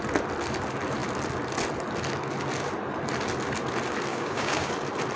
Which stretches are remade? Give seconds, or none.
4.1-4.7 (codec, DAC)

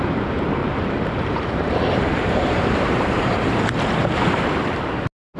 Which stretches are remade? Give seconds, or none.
0.6-3.8 (vocoder, BigVGAN v2)

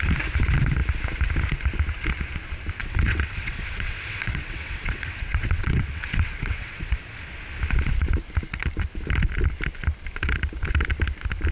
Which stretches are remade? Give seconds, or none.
2.8-7.0 (vocoder, WaveNeXt)

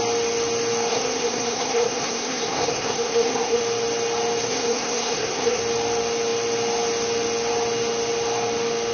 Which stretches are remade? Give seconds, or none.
0.9-3.6 (codec, SNAC); 4.4-5.6